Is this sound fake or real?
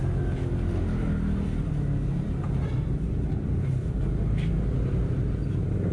real